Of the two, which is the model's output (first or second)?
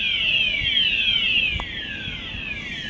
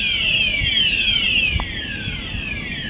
second